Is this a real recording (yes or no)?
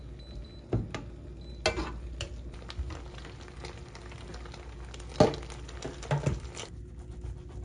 yes